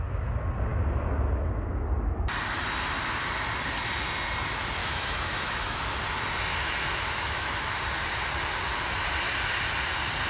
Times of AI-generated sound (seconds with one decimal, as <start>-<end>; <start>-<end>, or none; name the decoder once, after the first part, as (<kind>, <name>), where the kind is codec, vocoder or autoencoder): 4.8-5.8 (autoencoder, DAC-VAE); 6.5-7.8